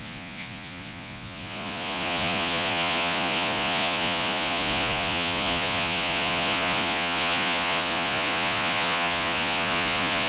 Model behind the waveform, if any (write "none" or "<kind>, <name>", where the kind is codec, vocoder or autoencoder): vocoder, Vocos